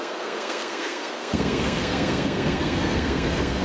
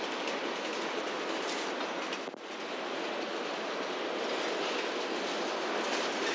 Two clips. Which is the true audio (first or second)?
second